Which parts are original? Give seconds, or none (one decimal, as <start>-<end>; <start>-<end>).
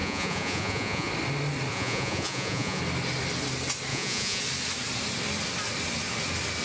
1.1-1.7; 2.8-3.9; 4.4-6.6